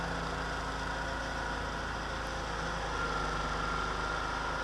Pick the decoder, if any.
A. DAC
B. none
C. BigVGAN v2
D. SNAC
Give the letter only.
B